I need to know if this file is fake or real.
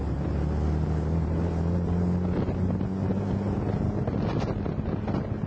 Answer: real